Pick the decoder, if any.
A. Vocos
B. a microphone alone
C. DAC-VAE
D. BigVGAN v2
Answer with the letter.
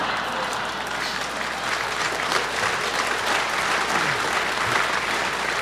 B